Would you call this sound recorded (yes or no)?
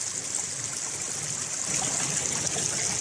yes